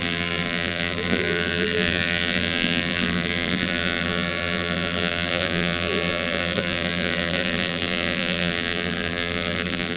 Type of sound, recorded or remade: remade